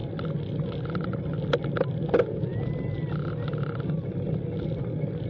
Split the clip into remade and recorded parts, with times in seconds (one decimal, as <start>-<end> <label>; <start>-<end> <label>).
0.0-5.3 recorded